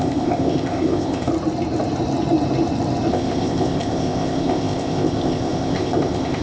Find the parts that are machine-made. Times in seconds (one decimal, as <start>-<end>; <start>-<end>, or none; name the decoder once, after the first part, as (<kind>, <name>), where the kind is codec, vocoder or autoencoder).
0.0-1.3 (codec, ZipCodec); 3.1-6.4